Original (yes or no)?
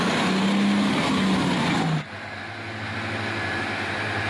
yes